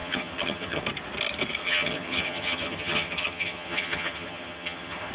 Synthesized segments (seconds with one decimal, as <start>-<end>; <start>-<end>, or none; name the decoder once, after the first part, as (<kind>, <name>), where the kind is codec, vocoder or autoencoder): 0.0-0.8 (vocoder, HiFi-GAN); 1.6-5.1

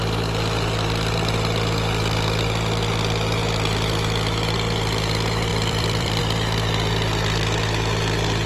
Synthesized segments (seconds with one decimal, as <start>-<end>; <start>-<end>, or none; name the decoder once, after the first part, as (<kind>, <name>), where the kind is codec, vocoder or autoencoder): 5.5-6.2 (vocoder, BigVGAN v2)

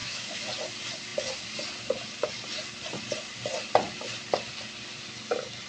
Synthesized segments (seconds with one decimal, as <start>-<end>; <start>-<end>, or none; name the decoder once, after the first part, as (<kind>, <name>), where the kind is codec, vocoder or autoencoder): 0.0-0.5 (autoencoder, DAC-VAE)

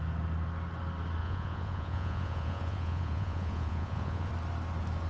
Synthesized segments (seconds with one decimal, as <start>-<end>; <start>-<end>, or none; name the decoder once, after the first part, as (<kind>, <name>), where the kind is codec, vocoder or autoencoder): 1.2-4.3 (vocoder, Vocos)

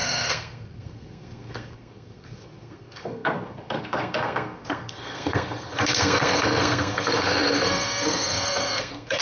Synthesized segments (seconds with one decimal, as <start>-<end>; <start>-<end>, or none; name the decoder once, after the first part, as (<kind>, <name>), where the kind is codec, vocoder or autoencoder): 0.0-9.2 (codec, SNAC)

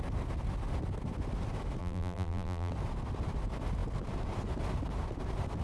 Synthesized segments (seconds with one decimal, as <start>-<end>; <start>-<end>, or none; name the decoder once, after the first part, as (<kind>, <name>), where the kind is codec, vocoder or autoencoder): 1.8-2.7 (vocoder, BigVGAN v2)